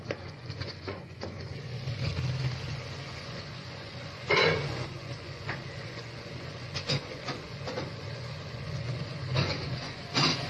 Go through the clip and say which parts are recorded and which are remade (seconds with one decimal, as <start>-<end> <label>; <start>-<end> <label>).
0.0-2.1 remade; 2.1-2.7 recorded; 2.7-10.5 remade